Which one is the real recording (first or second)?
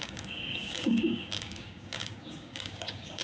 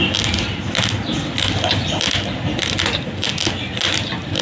second